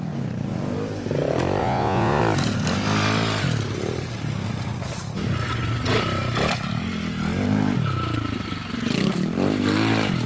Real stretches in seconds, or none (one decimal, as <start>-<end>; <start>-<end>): 0.0-1.6; 2.2-10.3